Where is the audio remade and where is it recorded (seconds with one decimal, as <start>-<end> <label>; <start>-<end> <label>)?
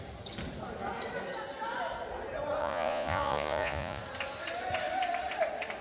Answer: 0.0-2.6 recorded; 2.6-4.0 remade; 4.0-5.8 recorded